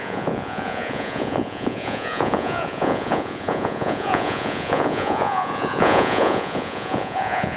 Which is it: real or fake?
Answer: fake